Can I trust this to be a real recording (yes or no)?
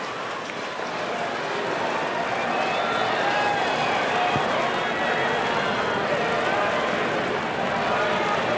yes